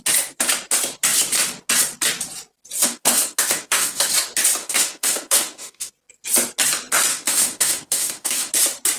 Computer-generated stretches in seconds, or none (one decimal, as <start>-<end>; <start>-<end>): 2.8-4.1; 4.6-5.9; 7.1-8.5